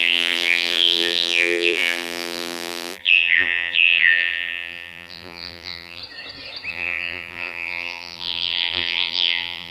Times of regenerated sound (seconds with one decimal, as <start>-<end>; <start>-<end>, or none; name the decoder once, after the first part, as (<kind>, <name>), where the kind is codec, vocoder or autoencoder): 0.0-6.0 (vocoder, BigVGAN v2); 6.7-9.7